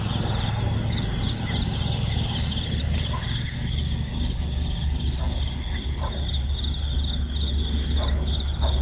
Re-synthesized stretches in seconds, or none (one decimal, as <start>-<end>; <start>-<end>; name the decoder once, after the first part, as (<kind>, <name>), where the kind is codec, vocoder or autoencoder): none